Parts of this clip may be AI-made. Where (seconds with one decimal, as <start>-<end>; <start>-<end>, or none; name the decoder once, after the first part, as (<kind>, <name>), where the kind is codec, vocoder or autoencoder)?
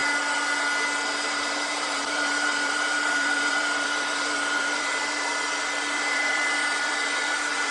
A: 1.1-5.3 (vocoder, BigVGAN v2); 5.8-7.7